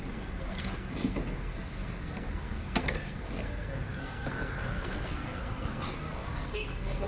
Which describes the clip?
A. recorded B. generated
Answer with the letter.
B